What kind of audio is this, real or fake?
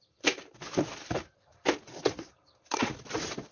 fake